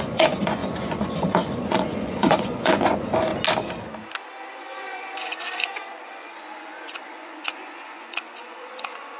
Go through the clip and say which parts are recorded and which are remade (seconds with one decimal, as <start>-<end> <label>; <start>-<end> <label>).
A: 0.0-3.3 remade; 3.3-4.5 recorded; 4.5-9.2 remade